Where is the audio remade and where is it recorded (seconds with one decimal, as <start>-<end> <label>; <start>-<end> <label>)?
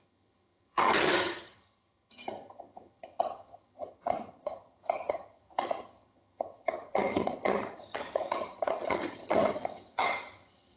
0.0-10.8 remade